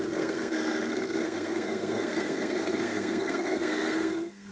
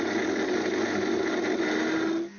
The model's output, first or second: first